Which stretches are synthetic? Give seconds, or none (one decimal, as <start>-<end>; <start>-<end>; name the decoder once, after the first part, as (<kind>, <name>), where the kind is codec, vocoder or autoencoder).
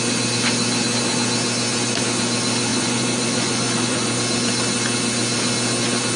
2.7-4.2 (vocoder, Vocos)